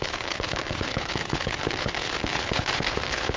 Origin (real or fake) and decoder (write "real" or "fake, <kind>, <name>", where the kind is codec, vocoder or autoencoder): fake, codec, HILCodec